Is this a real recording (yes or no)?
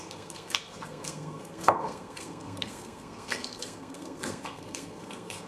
no